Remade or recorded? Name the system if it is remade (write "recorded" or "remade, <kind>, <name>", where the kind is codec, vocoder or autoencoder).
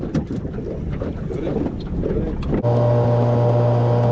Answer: recorded